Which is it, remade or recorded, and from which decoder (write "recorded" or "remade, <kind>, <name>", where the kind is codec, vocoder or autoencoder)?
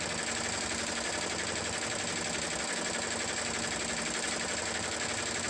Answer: recorded